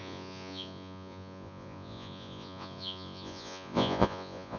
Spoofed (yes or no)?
yes